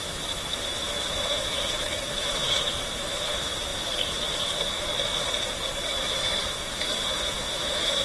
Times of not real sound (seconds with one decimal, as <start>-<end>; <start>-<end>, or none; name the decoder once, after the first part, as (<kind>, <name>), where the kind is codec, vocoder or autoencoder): 0.0-4.9 (autoencoder, DAC-VAE); 5.7-8.0